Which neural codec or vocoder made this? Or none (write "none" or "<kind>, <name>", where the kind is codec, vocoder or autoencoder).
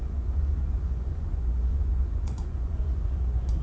vocoder, Vocos